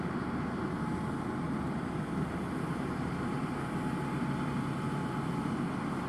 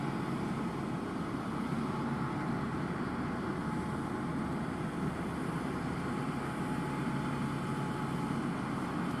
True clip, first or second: second